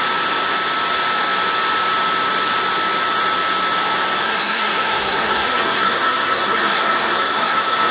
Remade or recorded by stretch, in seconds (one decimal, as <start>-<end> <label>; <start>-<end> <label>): 0.0-4.2 recorded; 4.2-7.9 remade